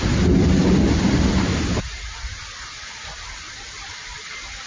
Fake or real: real